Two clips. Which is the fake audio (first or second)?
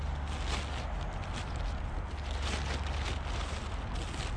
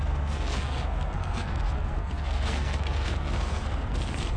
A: second